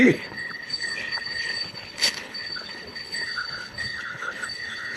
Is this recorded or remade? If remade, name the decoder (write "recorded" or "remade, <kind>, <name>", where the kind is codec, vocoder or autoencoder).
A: remade, codec, HILCodec